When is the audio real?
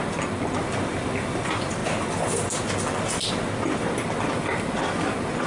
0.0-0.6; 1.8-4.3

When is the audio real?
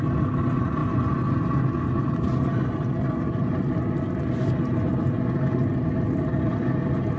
0.0-7.2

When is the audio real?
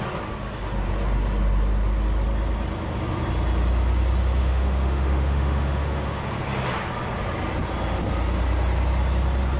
0.0-4.4; 6.2-9.6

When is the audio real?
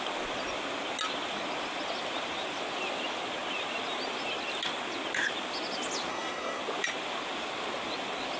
0.0-6.1; 6.6-8.4